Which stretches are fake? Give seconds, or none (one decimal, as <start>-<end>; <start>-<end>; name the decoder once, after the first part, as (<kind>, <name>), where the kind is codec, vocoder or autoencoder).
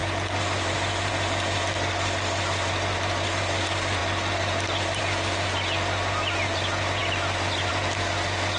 none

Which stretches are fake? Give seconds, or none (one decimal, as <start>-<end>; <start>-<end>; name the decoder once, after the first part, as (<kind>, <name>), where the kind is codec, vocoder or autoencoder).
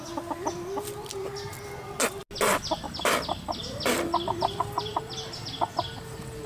none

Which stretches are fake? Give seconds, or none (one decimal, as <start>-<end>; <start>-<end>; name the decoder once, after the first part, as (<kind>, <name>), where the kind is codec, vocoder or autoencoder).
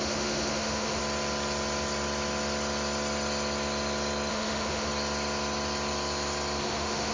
0.0-1.0 (autoencoder, DAC-VAE); 4.3-4.9; 6.6-7.1